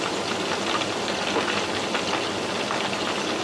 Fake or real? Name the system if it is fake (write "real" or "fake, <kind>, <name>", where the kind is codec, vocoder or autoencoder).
real